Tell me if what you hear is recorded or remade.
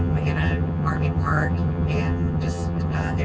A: remade